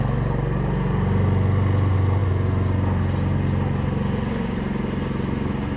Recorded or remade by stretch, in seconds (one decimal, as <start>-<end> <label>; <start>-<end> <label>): 0.0-5.8 recorded